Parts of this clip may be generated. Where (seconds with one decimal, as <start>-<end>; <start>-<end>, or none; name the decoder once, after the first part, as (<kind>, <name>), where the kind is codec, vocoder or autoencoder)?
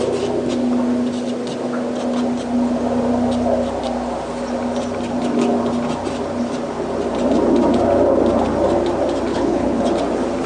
9.3-9.8 (codec, HILCodec)